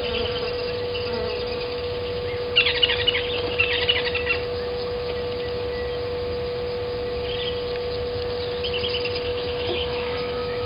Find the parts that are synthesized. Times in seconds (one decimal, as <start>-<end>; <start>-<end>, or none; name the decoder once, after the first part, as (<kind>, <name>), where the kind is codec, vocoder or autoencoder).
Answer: 9.3-10.7 (autoencoder, DAC-VAE)

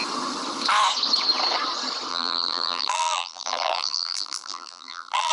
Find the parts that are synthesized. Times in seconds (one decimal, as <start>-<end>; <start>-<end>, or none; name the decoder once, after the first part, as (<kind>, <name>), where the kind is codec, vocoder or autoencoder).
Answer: 2.1-5.3 (vocoder, BigVGAN v2)

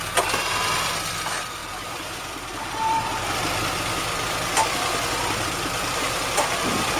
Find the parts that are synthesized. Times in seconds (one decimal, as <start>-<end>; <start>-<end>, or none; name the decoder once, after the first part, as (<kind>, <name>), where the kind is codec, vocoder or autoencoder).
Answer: 1.6-3.4 (vocoder, BigVGAN v2); 4.6-7.0